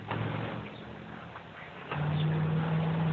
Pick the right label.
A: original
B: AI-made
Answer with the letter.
A